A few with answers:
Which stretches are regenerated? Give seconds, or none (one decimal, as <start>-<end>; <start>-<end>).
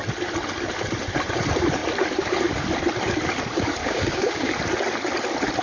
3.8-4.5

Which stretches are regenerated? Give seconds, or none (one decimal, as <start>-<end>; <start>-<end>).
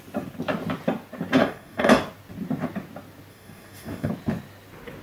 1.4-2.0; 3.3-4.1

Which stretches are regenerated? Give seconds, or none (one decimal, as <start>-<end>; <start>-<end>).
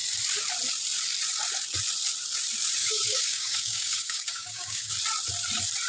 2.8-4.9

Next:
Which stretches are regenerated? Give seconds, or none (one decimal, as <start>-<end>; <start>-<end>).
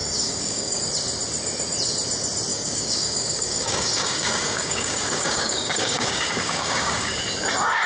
0.0-0.8; 2.5-7.2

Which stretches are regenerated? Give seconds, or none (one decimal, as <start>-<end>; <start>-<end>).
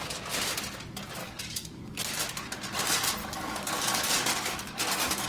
1.2-2.1; 3.2-5.3